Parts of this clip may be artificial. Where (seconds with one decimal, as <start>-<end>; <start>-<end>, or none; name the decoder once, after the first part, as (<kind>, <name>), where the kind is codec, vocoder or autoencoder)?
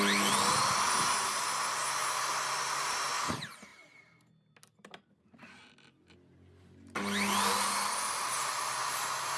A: none